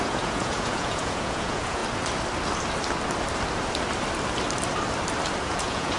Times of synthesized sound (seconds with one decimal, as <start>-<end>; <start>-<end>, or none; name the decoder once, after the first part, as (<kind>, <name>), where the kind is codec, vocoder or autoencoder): 0.0-1.8 (vocoder, Vocos); 5.4-6.0